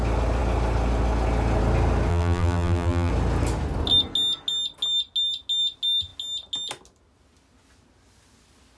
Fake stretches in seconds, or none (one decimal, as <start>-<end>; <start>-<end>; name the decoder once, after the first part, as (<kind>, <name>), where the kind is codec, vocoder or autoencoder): 2.1-3.1 (vocoder, BigVGAN v2)